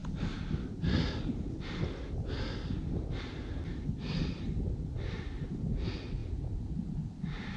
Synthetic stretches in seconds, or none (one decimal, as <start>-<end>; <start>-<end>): none